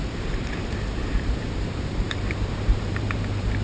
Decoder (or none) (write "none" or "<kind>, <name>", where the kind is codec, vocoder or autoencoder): vocoder, BigVGAN v2